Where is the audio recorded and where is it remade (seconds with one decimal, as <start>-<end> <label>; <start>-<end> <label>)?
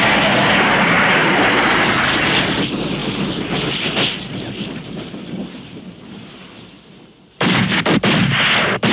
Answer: 0.0-8.9 recorded